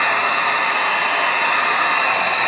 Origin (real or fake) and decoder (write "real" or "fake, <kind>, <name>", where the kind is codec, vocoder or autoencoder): real